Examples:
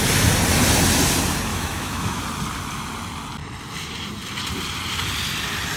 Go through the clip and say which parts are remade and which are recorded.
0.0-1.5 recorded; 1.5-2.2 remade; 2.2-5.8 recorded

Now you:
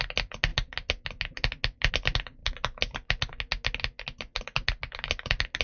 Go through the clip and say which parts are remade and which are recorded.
0.0-5.6 recorded

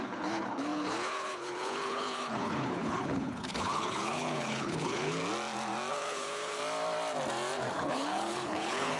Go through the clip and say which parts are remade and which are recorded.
0.0-5.2 remade; 5.2-5.9 recorded; 5.9-6.6 remade; 6.6-7.7 recorded; 7.7-9.0 remade